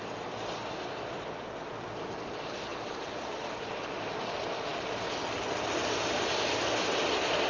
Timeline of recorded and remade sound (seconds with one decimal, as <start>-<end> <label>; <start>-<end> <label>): 0.0-7.5 recorded